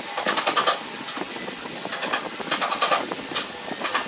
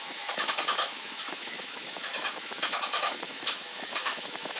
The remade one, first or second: second